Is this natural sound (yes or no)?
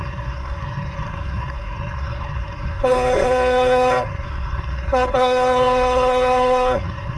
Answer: no